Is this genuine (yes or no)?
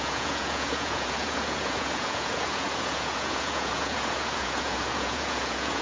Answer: no